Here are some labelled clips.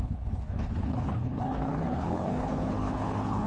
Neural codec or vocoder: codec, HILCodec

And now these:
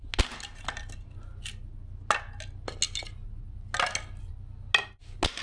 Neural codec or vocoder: none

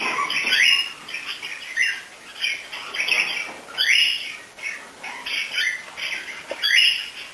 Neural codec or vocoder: none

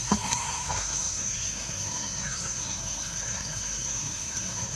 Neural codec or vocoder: codec, SNAC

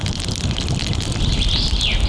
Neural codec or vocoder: none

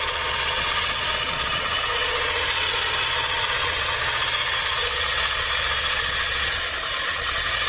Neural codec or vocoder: vocoder, Vocos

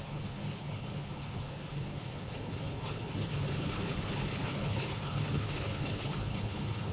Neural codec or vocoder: codec, HILCodec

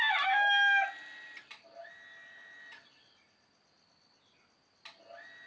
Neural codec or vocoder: none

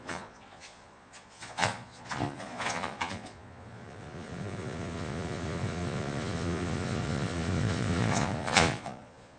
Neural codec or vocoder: vocoder, Vocos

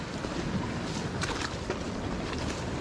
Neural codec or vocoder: none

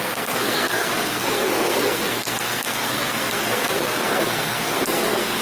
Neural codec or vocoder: codec, SNAC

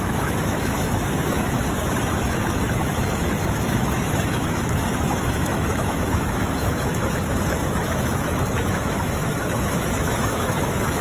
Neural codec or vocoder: autoencoder, DAC-VAE